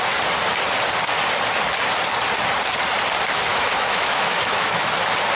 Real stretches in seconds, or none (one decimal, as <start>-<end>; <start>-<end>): 0.0-3.5; 4.9-5.4